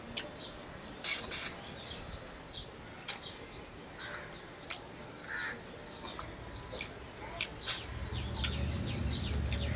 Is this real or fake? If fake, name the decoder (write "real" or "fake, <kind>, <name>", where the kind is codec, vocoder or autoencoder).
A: real